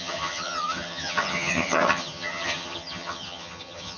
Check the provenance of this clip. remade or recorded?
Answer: remade